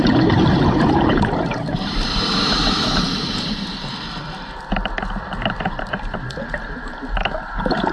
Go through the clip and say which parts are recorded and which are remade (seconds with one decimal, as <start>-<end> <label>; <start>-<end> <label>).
0.0-3.7 remade; 3.7-4.7 recorded; 4.7-7.9 remade